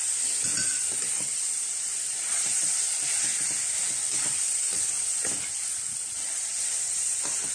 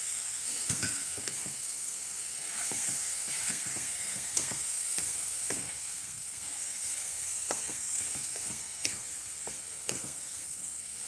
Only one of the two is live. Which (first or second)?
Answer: first